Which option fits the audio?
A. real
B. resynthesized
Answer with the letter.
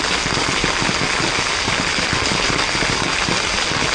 A